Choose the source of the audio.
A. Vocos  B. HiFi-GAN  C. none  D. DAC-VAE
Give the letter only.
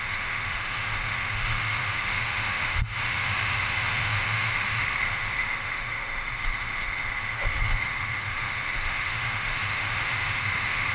D